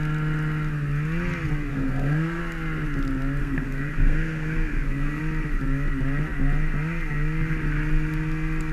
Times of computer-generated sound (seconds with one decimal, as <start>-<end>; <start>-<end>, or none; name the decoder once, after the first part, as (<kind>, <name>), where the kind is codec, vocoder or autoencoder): 1.7-2.4 (codec, SNAC); 3.4-5.2